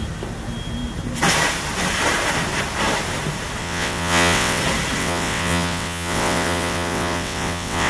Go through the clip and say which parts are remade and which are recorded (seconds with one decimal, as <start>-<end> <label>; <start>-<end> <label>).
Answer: 0.0-3.6 recorded; 3.6-4.6 remade; 4.6-5.0 recorded; 5.0-7.9 remade